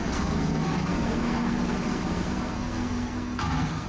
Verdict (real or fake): fake